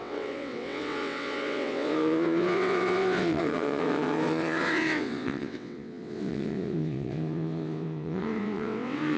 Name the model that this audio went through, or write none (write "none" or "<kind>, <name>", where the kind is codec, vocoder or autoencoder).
vocoder, WaveNeXt